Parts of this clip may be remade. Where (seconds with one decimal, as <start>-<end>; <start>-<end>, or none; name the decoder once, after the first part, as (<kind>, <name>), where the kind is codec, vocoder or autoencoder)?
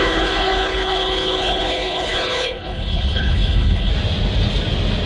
0.0-3.9 (codec, HILCodec)